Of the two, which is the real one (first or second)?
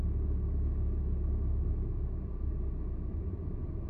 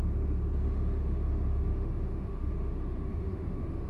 first